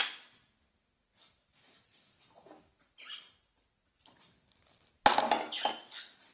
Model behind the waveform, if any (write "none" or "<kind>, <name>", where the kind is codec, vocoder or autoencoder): none